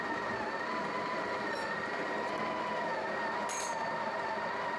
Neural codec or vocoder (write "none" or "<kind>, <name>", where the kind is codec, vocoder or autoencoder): none